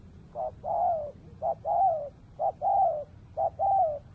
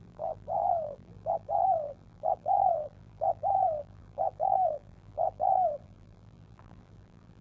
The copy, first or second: second